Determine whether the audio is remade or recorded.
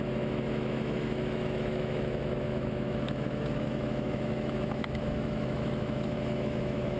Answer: remade